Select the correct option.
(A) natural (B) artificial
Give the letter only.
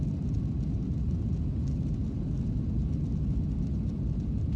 A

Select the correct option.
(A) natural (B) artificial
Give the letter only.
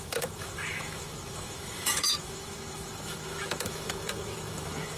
B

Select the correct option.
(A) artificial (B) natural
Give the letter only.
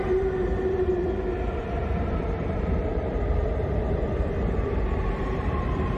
A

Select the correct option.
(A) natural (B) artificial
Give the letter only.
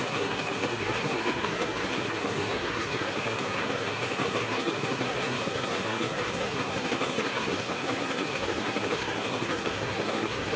B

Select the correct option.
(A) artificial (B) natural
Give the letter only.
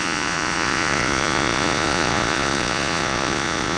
A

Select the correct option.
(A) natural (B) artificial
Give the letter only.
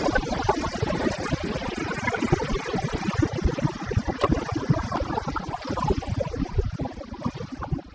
A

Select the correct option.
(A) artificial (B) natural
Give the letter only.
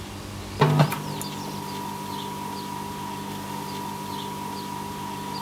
B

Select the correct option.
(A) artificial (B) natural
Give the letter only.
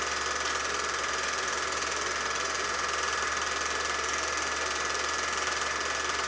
B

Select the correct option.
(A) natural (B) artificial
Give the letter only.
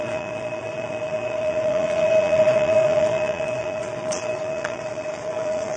B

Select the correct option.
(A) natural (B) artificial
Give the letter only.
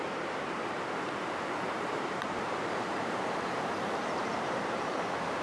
B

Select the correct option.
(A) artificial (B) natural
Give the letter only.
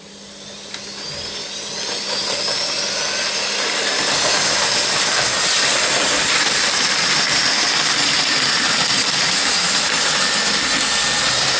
B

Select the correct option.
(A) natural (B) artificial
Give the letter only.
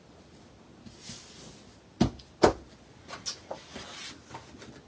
A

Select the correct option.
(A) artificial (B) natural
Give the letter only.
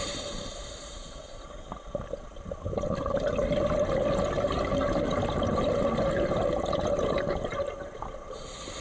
B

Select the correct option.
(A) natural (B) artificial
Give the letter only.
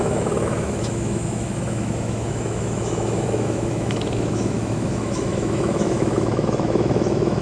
B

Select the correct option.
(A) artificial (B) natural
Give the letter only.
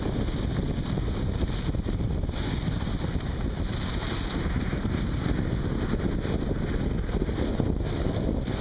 B